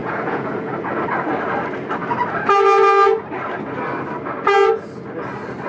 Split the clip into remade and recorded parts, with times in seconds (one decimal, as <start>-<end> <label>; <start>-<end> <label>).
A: 0.0-0.7 remade; 0.7-5.7 recorded